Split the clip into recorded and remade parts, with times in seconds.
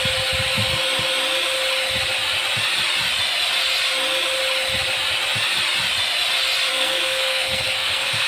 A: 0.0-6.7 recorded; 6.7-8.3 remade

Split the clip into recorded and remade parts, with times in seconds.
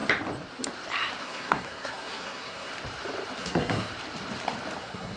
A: 0.0-1.2 recorded; 1.2-2.7 remade; 2.7-3.4 recorded; 3.4-3.9 remade; 3.9-4.8 recorded; 4.8-5.2 remade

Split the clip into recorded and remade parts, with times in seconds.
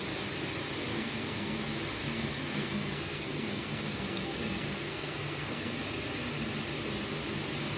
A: 0.0-0.9 recorded; 0.9-1.6 remade; 1.6-2.0 recorded; 2.0-5.8 remade; 5.8-7.8 recorded